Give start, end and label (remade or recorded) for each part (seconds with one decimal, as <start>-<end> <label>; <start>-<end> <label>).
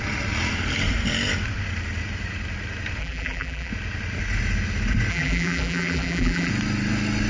0.0-3.0 recorded; 3.0-3.7 remade; 3.7-5.1 recorded; 5.1-6.5 remade; 6.5-7.3 recorded